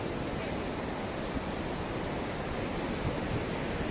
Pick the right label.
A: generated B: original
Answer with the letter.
B